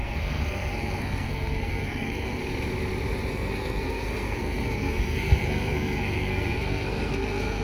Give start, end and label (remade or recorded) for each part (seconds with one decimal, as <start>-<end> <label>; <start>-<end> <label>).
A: 0.0-2.4 remade; 2.4-3.3 recorded; 3.3-7.6 remade